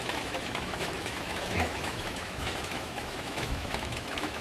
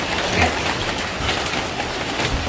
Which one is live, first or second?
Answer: second